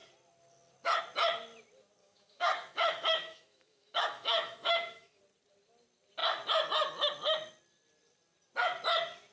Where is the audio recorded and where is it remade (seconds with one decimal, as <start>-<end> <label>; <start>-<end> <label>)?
0.0-2.0 recorded; 2.0-5.2 remade; 5.2-9.3 recorded